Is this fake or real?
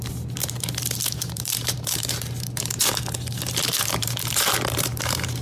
fake